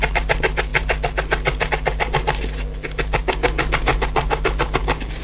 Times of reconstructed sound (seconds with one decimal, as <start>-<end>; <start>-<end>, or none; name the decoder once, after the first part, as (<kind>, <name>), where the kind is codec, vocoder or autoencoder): none